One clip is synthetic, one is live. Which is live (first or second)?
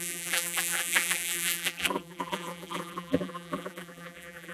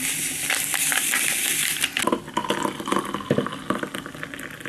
second